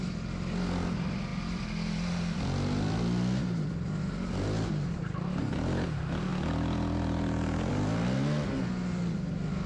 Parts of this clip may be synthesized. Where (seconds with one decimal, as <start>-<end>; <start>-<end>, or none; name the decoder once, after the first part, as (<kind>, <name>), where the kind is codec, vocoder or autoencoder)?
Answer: none